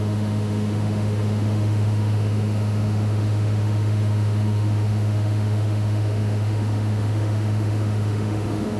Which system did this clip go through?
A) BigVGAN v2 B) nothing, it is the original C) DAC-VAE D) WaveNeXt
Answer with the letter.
C